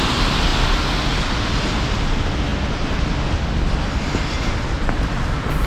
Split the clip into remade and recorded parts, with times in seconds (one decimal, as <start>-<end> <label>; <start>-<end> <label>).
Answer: 0.0-5.7 recorded